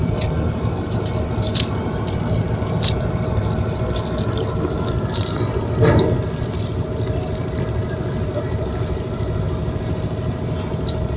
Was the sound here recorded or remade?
recorded